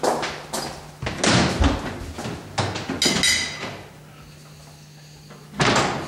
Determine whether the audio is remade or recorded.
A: recorded